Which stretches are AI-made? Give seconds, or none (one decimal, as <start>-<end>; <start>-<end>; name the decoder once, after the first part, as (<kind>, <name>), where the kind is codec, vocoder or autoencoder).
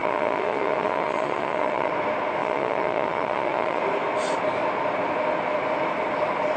0.0-1.9 (vocoder, Vocos); 2.4-3.8